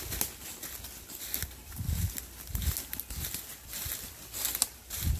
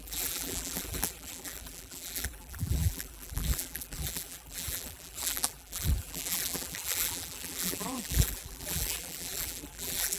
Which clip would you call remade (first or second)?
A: second